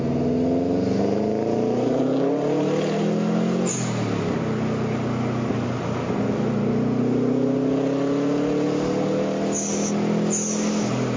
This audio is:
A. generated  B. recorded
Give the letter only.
B